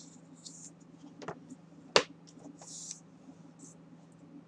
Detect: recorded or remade recorded